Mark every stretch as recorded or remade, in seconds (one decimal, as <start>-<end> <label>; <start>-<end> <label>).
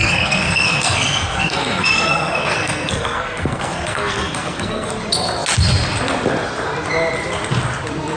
0.0-4.9 remade; 4.9-8.2 recorded